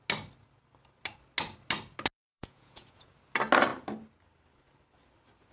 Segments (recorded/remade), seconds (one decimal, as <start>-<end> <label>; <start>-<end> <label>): 0.0-2.3 recorded; 2.3-3.1 remade; 3.1-5.5 recorded